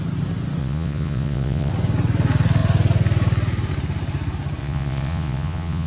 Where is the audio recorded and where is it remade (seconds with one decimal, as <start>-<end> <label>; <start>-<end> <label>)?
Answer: 0.0-0.6 recorded; 0.6-1.7 remade; 1.7-4.6 recorded; 4.6-5.9 remade